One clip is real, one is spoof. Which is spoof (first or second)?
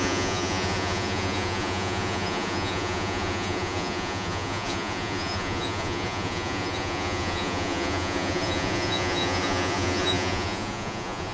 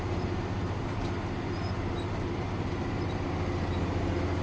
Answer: first